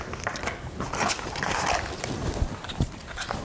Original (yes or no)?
yes